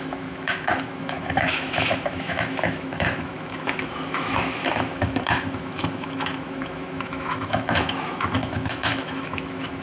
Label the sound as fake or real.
fake